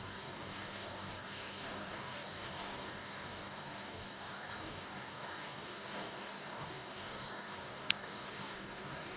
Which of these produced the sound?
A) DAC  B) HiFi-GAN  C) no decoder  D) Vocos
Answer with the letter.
A